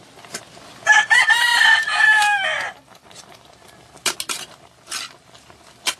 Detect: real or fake real